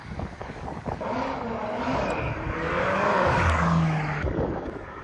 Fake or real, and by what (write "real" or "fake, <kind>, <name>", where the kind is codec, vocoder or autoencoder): fake, codec, DAC